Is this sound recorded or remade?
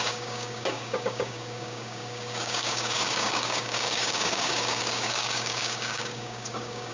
remade